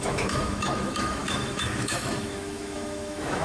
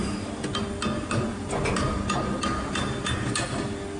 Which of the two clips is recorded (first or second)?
second